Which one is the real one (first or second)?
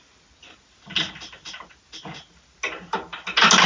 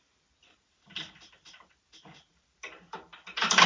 first